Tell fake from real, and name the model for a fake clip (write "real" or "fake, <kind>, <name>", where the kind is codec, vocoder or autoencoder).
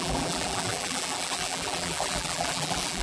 fake, vocoder, BigVGAN v2